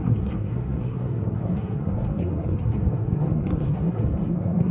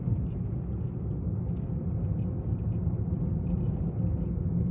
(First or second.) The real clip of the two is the second